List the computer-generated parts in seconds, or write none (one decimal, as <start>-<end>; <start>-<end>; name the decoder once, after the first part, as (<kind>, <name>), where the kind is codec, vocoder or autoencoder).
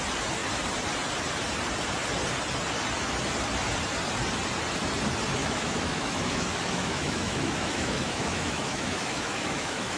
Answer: 5.4-10.0 (autoencoder, DAC-VAE)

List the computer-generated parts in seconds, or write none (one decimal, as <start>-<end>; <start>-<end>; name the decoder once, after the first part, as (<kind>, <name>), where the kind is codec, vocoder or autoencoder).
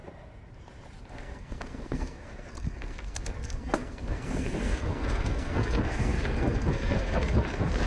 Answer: 1.1-7.9 (codec, SNAC)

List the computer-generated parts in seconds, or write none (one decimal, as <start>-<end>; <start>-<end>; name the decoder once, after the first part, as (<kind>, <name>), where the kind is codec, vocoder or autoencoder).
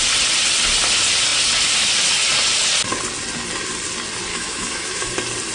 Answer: 4.3-5.1 (autoencoder, DAC-VAE)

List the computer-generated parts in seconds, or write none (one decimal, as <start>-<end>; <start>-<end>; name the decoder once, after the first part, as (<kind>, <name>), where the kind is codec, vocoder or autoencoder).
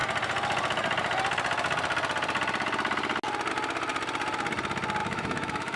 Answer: 5.0-5.8 (autoencoder, DAC-VAE)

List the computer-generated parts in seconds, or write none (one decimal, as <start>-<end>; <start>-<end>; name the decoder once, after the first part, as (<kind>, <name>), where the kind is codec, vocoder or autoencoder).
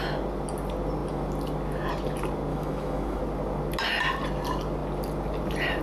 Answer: 2.5-3.2 (autoencoder, DAC-VAE)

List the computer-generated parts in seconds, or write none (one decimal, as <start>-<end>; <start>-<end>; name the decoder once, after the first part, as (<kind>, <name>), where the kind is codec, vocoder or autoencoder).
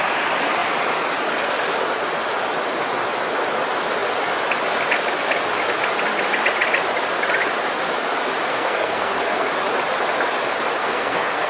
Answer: 8.5-9.5 (codec, SNAC); 10.8-11.5